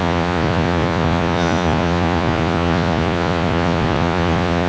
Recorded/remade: remade